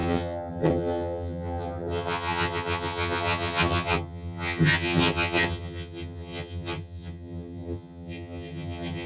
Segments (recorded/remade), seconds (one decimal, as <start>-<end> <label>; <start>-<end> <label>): 0.0-9.1 remade